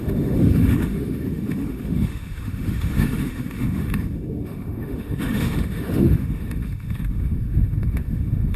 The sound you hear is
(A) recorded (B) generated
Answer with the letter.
B